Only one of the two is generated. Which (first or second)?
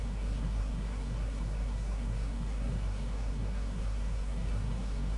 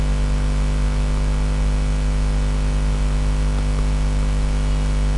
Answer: first